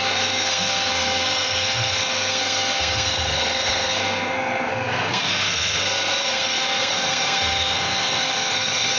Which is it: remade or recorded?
remade